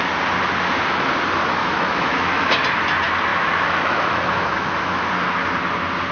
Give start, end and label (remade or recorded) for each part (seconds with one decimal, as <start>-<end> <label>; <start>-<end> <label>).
0.0-1.6 recorded; 1.6-2.5 remade; 2.5-3.3 recorded; 3.3-5.1 remade; 5.1-6.1 recorded